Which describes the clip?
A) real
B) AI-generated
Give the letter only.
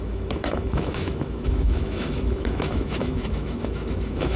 B